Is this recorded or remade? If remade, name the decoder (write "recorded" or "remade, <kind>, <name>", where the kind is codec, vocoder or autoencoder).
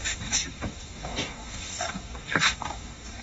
remade, codec, DAC